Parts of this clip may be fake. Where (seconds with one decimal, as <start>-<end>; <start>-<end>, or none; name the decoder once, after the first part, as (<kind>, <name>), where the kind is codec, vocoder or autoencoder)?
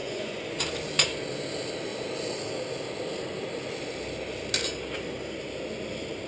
0.0-0.6 (vocoder, Vocos)